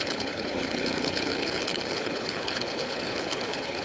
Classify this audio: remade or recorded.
remade